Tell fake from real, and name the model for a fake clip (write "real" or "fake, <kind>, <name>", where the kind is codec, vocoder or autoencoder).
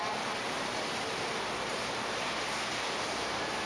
real